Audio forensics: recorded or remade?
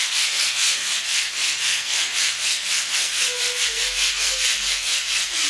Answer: remade